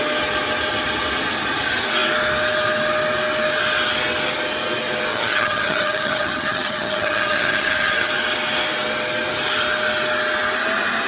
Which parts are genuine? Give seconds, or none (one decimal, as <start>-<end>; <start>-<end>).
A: 0.0-5.1; 8.1-11.1